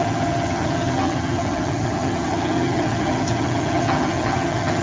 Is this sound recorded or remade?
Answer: remade